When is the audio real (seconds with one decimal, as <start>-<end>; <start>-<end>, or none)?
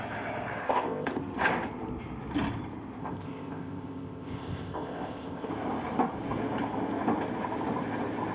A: 0.0-0.6; 1.2-3.0; 5.5-8.3